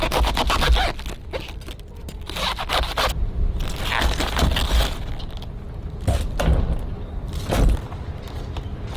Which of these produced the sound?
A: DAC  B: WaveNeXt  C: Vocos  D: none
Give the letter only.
D